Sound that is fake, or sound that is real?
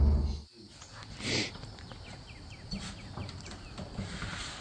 real